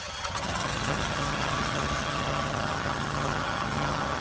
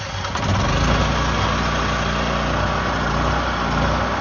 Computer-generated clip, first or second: first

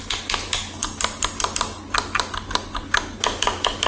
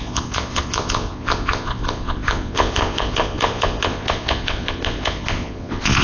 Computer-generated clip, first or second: second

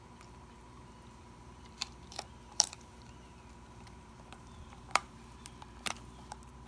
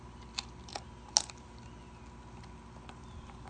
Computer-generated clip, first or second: first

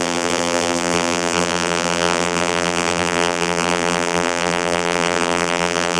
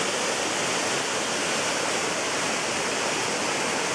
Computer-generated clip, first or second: first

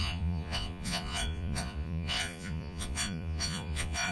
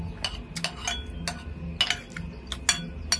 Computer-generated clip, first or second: first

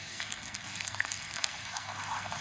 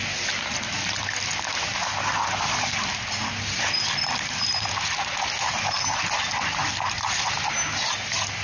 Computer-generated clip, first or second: first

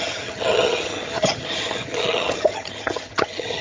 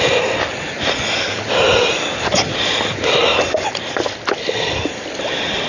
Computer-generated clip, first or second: first